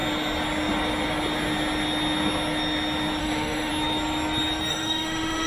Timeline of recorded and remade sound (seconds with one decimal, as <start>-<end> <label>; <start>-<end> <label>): 0.0-3.2 recorded; 3.2-3.7 remade; 3.7-4.7 recorded; 4.7-5.5 remade